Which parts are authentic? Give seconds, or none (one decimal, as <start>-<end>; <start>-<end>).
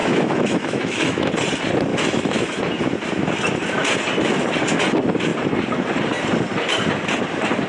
1.3-1.9; 2.6-7.7